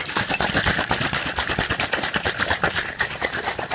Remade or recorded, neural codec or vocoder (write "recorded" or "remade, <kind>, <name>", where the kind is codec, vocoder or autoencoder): remade, vocoder, BigVGAN v2